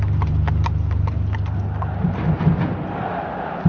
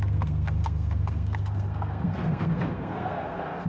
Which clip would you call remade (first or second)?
second